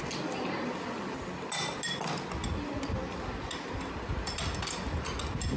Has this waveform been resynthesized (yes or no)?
no